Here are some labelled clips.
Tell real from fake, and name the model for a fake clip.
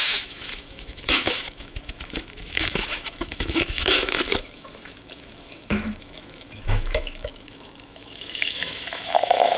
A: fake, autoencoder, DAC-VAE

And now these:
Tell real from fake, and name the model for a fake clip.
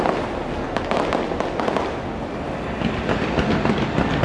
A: real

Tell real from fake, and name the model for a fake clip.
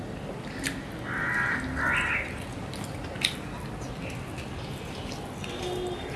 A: real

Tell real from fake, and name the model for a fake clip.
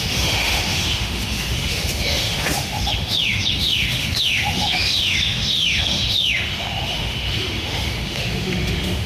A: fake, autoencoder, DAC-VAE